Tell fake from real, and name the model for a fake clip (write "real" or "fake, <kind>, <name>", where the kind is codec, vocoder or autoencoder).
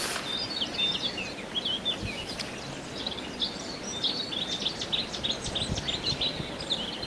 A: real